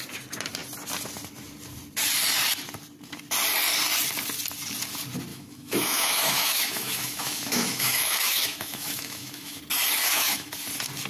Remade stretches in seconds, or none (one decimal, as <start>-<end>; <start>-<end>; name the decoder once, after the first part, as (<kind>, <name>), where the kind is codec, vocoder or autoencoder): 5.3-9.6 (autoencoder, DAC-VAE); 10.0-10.5